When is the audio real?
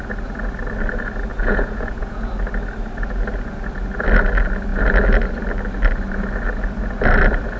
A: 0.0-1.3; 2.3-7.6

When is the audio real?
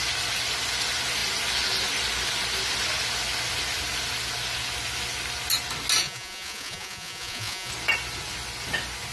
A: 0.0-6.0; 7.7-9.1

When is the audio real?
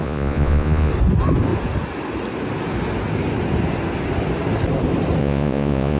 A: 0.9-5.2